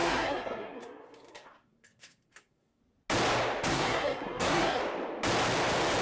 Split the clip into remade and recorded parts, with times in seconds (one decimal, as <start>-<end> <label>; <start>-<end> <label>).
0.0-2.8 remade; 2.8-3.7 recorded; 3.7-4.8 remade; 4.8-6.0 recorded